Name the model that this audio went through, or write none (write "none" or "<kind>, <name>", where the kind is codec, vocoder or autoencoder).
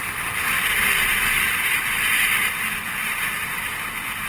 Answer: none